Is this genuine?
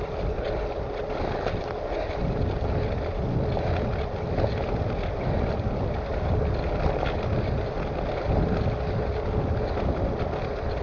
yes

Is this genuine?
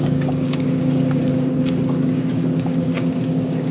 no